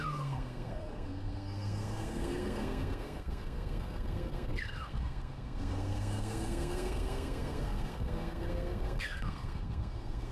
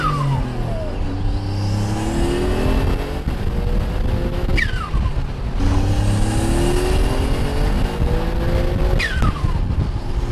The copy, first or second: first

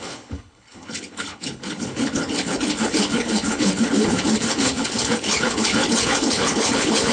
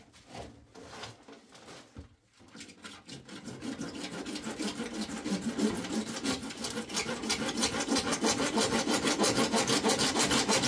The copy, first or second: first